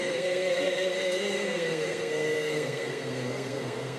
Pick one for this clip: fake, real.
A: fake